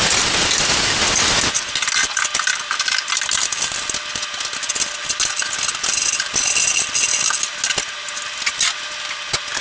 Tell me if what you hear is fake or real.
real